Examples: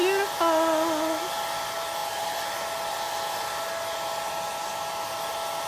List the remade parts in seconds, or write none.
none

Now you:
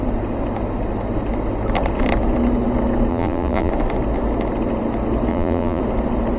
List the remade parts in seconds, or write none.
3.1-3.7 (vocoder, BigVGAN v2); 5.3-5.8